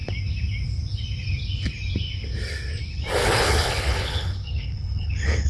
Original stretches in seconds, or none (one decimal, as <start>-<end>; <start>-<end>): 0.0-3.2